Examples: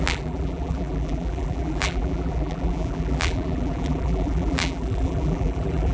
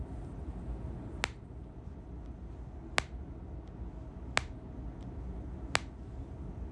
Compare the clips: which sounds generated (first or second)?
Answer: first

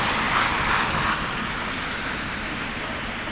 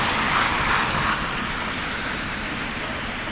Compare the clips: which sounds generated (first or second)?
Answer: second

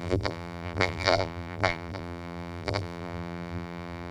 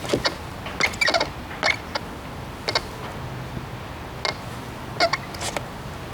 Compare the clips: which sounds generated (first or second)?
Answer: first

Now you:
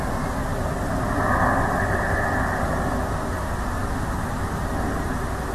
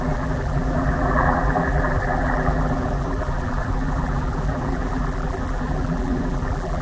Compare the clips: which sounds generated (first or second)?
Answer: second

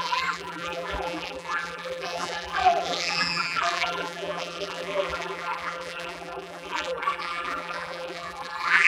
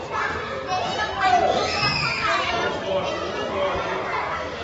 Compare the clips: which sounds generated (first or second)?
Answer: first